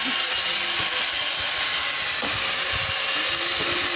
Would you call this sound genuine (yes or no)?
yes